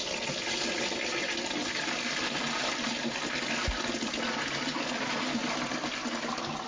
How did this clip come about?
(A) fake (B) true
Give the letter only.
B